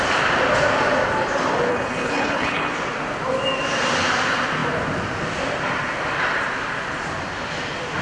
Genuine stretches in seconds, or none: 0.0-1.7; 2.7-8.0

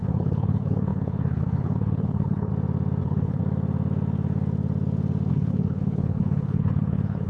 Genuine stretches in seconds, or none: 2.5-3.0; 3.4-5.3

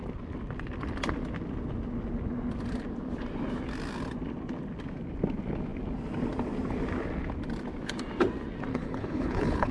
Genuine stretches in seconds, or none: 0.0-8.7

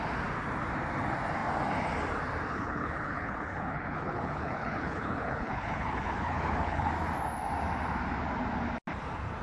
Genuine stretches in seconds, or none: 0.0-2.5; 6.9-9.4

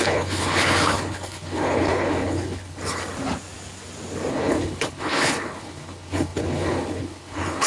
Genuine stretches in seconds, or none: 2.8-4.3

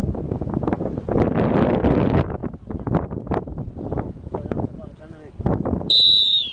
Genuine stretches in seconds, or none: 0.0-6.5